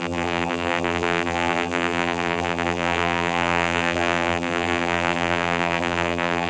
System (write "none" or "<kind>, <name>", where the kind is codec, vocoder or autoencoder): vocoder, BigVGAN v2